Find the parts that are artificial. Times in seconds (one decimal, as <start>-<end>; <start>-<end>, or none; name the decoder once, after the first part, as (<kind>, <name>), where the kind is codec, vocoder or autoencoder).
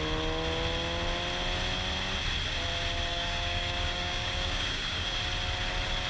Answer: 3.1-5.2 (codec, DAC)